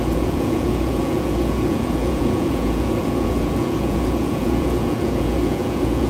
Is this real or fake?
fake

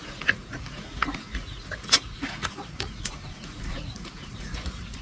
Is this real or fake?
fake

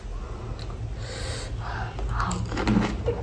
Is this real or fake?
real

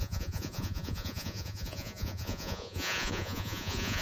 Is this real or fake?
fake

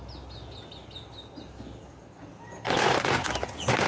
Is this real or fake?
real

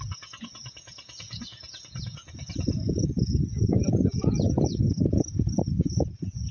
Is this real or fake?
fake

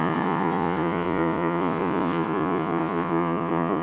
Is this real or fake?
fake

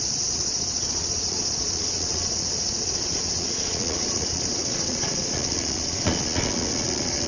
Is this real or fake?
fake